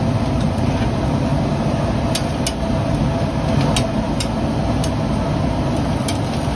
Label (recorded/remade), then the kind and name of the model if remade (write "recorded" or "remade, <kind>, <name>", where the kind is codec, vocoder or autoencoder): recorded